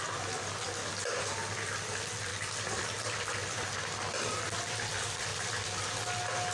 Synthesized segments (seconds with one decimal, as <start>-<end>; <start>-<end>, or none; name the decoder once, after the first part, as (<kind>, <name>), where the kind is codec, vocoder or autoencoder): 2.3-4.4 (vocoder, BigVGAN v2)